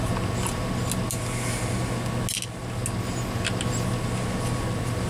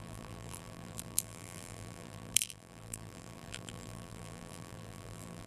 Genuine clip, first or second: first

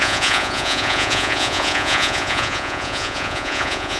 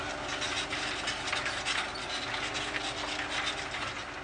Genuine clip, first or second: second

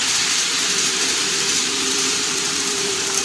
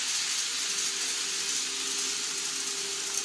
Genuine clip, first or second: second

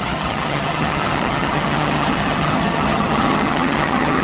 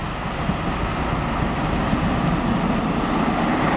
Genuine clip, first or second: second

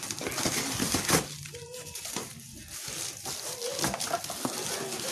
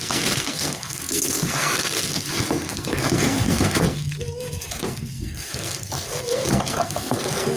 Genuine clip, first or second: first